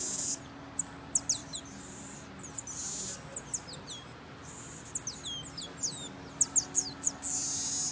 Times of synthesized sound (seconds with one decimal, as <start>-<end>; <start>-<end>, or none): 1.4-2.0